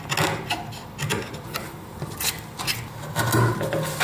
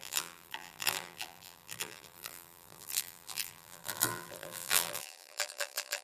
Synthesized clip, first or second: second